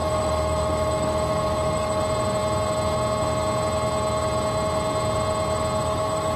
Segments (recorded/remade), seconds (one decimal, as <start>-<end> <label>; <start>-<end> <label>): 0.0-2.0 remade; 2.0-5.8 recorded; 5.8-6.4 remade

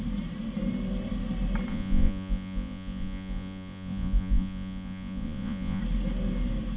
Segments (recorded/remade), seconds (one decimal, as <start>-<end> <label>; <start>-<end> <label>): 0.0-1.7 recorded; 1.7-5.8 remade; 5.8-6.8 recorded

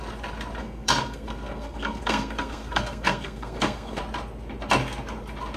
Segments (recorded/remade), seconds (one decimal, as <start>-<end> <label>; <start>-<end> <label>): 0.0-0.6 recorded; 0.6-4.0 remade; 4.0-5.6 recorded

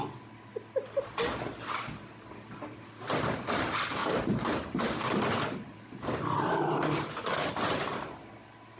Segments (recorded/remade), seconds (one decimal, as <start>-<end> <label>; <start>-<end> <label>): 0.0-4.0 recorded; 4.0-7.5 remade; 7.5-8.8 recorded

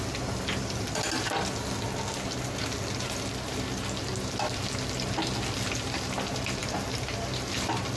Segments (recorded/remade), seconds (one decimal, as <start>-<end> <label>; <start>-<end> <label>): 0.0-6.6 recorded; 6.6-7.5 remade; 7.5-8.0 recorded

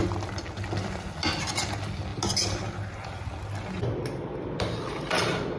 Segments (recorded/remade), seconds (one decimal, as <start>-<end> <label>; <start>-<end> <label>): 0.0-5.6 recorded

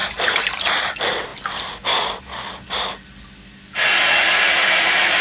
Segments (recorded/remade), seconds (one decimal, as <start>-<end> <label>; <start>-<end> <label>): 0.0-1.3 remade; 1.3-4.2 recorded; 4.2-5.2 remade